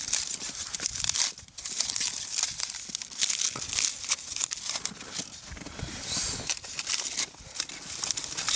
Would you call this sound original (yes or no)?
yes